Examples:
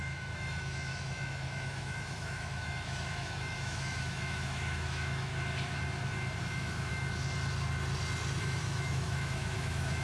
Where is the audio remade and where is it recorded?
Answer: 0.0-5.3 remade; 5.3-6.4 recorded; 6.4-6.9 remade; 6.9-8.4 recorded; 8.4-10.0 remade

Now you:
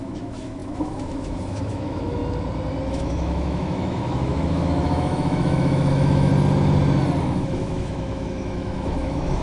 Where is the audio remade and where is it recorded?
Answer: 0.0-2.2 remade; 2.2-2.9 recorded; 2.9-6.3 remade; 6.3-7.2 recorded; 7.2-9.4 remade

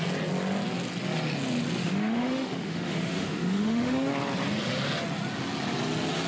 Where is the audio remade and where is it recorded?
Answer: 0.0-1.8 recorded; 1.8-4.1 remade; 4.1-6.3 recorded

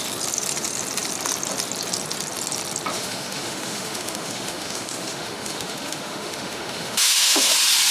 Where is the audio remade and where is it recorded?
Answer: 0.0-2.9 recorded; 2.9-7.5 remade; 7.5-7.9 recorded